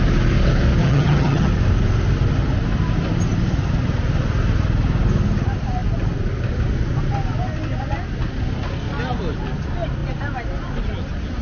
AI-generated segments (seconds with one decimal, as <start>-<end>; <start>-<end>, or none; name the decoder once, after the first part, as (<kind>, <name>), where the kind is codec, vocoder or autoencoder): 0.8-1.5 (vocoder, HiFi-GAN)